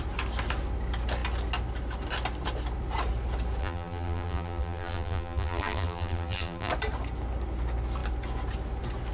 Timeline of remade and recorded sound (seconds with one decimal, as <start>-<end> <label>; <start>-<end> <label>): 0.0-3.6 recorded; 3.6-6.7 remade; 6.7-9.1 recorded